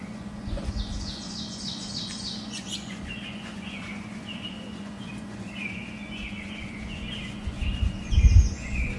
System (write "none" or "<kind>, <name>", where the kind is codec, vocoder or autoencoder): vocoder, Vocos